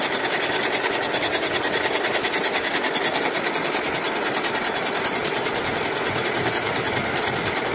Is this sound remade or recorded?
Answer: recorded